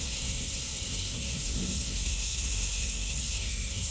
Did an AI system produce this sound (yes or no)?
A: yes